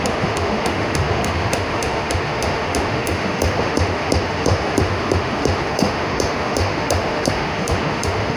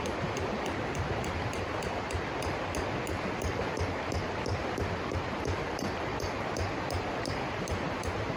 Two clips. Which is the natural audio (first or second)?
second